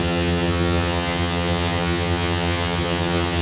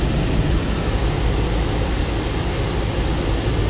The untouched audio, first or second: second